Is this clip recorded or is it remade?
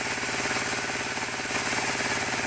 recorded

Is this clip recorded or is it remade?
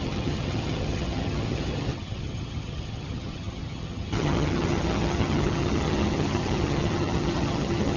remade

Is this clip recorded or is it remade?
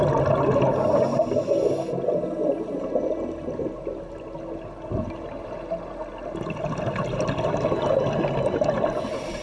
recorded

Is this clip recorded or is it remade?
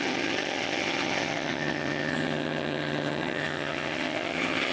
remade